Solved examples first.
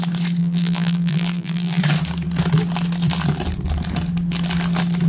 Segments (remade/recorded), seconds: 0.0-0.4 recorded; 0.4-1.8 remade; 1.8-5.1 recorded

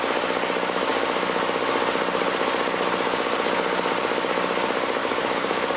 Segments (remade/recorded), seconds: 0.0-5.0 recorded; 5.0-5.8 remade

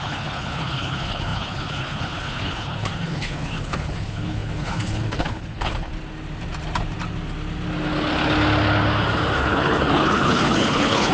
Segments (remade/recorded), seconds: 0.0-5.9 remade; 5.9-9.4 recorded; 9.4-11.1 remade

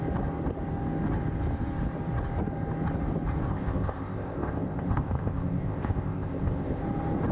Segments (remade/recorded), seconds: 0.0-3.5 recorded; 3.5-6.8 remade; 6.8-7.3 recorded

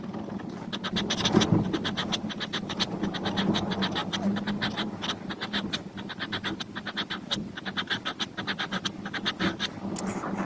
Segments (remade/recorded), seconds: 0.0-10.4 recorded